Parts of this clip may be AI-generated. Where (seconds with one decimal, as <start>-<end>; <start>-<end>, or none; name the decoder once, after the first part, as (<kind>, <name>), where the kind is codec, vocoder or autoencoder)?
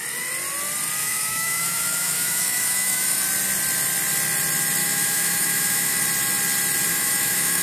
1.0-3.2 (autoencoder, DAC-VAE); 4.8-6.0; 6.9-7.6